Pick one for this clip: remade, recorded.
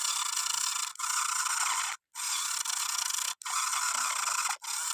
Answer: recorded